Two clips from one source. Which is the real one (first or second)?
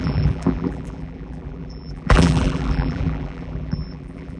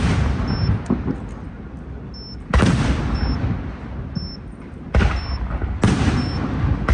second